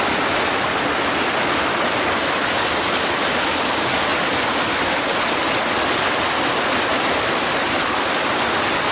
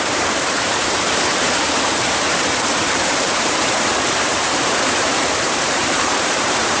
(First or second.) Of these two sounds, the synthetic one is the second